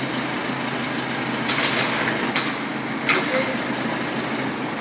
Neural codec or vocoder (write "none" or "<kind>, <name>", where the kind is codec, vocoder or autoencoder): none